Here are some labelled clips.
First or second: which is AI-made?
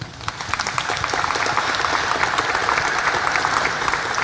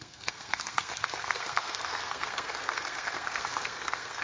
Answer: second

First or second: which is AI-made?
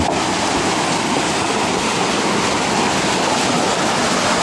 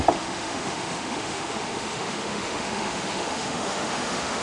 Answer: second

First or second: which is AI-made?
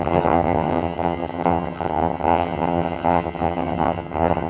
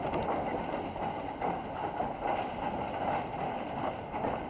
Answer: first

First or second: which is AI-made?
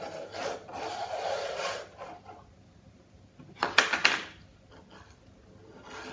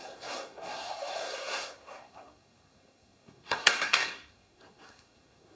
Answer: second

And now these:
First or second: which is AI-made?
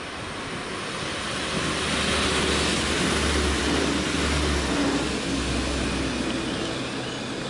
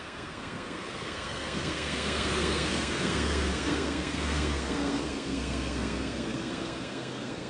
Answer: second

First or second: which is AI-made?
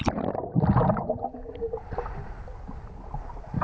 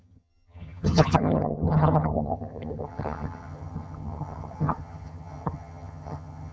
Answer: second